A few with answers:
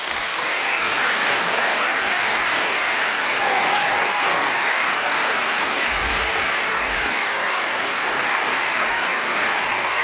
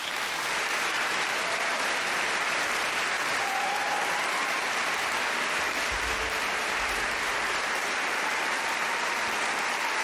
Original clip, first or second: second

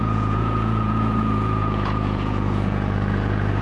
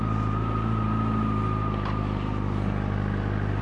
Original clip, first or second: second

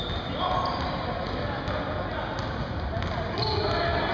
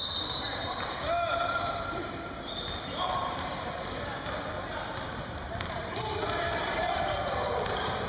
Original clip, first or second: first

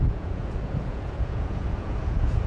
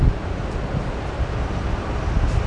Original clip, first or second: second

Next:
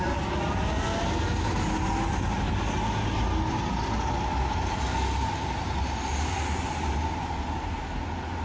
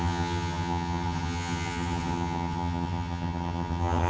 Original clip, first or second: first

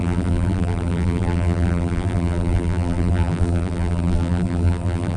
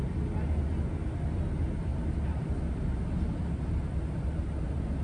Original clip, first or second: second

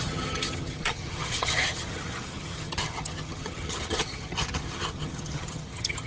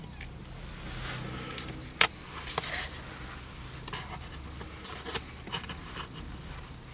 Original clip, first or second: second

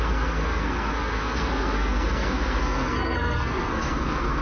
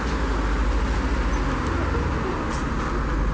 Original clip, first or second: second